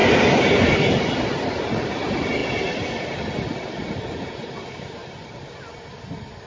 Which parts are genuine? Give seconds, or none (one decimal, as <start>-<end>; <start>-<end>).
0.0-6.5